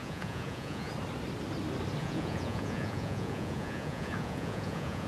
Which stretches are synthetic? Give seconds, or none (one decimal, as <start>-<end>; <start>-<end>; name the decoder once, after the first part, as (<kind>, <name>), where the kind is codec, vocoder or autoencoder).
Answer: 0.0-0.9 (vocoder, Vocos); 2.0-5.1